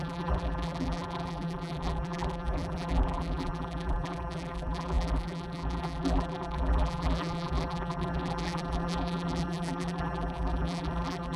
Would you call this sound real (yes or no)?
no